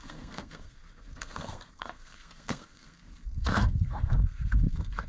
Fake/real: fake